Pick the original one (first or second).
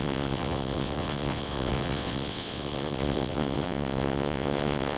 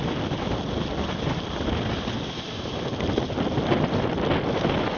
second